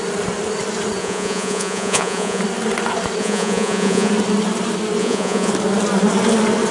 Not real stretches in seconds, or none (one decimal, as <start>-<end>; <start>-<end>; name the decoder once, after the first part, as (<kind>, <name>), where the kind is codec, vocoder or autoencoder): 1.0-2.4 (vocoder, Vocos); 3.2-4.1; 5.0-5.5

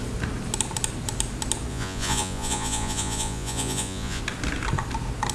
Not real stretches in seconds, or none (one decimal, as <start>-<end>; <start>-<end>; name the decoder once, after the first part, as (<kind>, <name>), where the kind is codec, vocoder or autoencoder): 1.7-4.2 (vocoder, Vocos)